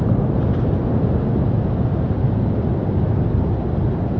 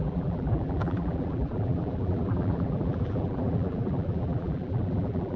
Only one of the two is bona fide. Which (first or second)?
first